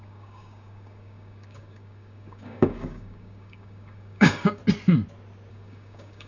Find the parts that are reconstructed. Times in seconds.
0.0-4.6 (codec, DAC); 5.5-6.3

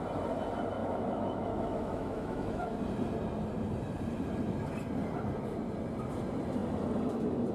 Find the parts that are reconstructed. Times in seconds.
0.8-2.8 (autoencoder, DAC-VAE)

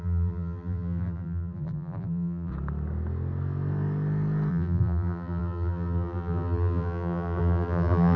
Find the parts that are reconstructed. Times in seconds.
0.0-2.5 (vocoder, BigVGAN v2); 4.5-8.2